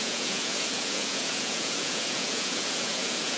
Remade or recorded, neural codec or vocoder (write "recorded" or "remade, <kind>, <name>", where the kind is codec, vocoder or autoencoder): remade, vocoder, Vocos